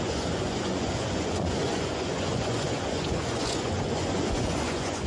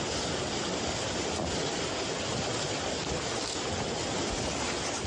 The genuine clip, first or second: second